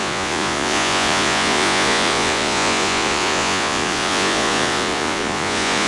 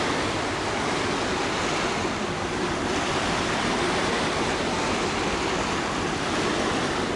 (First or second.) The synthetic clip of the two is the first